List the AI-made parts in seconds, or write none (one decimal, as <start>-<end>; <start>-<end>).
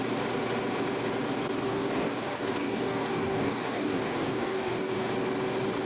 1.7-5.1